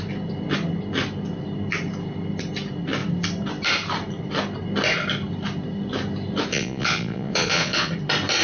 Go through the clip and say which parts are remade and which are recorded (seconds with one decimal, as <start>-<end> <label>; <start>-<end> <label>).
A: 0.0-6.5 recorded; 6.5-7.9 remade; 7.9-8.4 recorded